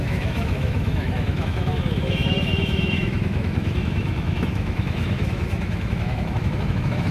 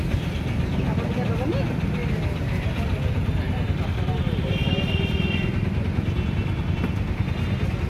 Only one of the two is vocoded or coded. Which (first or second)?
first